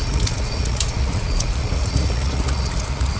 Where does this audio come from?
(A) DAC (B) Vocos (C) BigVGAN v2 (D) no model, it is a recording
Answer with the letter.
B